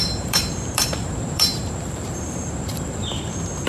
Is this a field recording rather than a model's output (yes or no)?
no